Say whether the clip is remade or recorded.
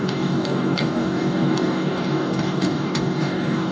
remade